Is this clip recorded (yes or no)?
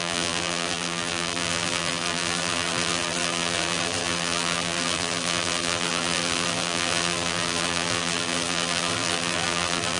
no